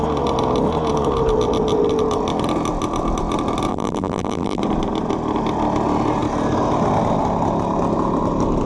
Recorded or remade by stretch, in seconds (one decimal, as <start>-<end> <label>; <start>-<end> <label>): 0.0-3.7 recorded; 3.7-4.6 remade; 4.6-8.7 recorded